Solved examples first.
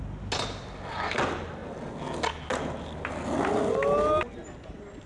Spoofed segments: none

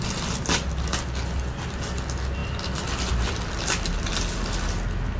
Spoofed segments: none

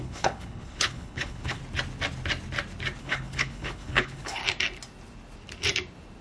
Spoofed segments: 0.0-1.6 (codec, HILCodec); 3.0-4.4

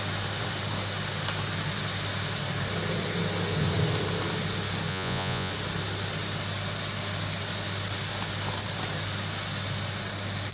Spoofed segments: 4.9-5.5 (vocoder, Vocos)

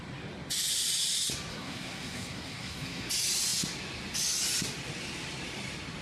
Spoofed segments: 1.5-3.1 (codec, SNAC)

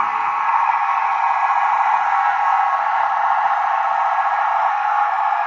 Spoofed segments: 0.0-1.0 (codec, SNAC); 2.1-3.0; 4.6-5.5

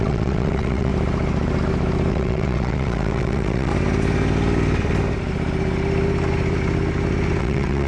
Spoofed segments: 0.0-0.9 (vocoder, WaveNeXt); 2.1-3.7; 7.4-7.9

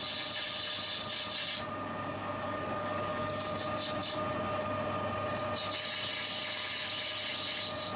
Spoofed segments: 2.2-3.6 (codec, DAC)